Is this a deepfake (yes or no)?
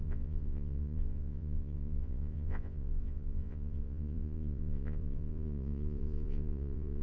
yes